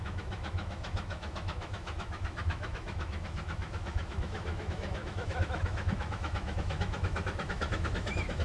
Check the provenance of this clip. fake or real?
fake